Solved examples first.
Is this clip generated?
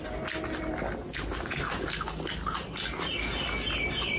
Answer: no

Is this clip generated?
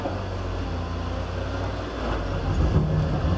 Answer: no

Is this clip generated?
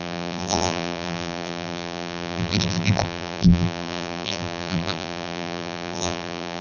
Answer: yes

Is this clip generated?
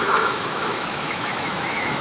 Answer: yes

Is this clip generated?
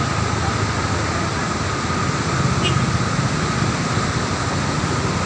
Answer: no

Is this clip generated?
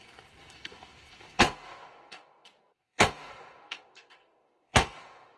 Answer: yes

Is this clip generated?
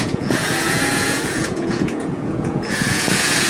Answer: yes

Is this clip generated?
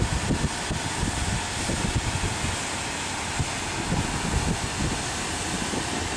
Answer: no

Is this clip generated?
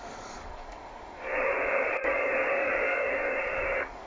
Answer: yes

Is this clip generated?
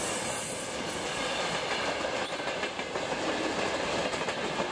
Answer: no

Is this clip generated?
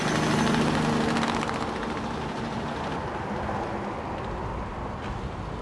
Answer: no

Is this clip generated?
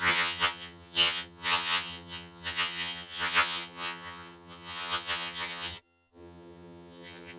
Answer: yes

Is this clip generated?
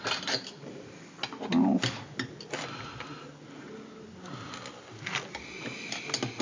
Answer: no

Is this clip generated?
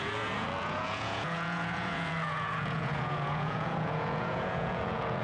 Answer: yes